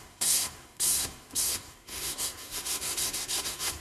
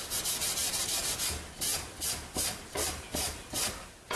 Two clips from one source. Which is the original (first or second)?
second